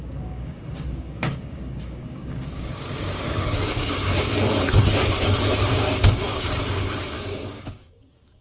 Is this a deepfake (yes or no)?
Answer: yes